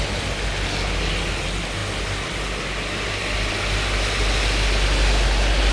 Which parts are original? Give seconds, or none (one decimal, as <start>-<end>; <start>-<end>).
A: 0.0-5.7